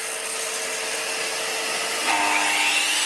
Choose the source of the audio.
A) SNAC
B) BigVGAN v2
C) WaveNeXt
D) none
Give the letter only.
D